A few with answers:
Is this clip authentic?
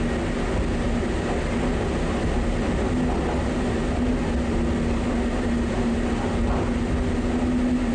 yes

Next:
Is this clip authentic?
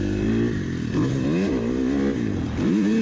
yes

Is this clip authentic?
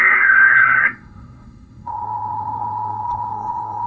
no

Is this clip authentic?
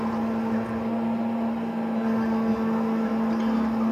yes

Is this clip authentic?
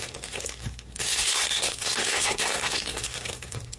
no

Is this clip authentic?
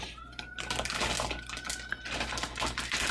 yes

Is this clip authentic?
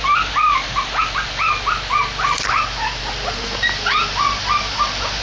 yes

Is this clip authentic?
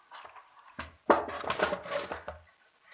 yes